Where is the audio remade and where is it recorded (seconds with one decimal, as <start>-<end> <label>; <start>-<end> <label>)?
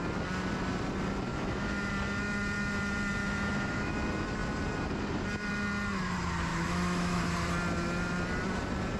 0.0-1.3 recorded; 1.3-1.9 remade; 1.9-3.2 recorded; 3.2-3.9 remade; 3.9-6.5 recorded; 6.5-7.2 remade; 7.2-9.0 recorded